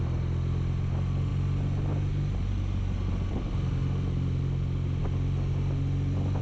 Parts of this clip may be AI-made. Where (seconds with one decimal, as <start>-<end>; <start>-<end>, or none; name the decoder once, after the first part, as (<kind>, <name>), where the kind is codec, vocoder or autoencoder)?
none